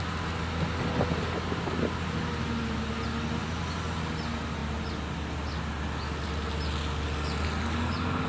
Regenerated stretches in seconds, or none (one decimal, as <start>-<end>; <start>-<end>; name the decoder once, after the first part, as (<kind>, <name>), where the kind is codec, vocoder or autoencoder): none